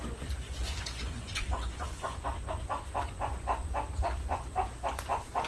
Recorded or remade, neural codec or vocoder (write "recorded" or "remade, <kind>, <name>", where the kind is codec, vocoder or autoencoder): remade, vocoder, Vocos